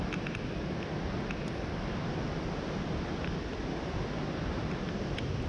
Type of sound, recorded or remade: recorded